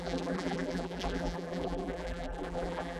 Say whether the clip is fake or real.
fake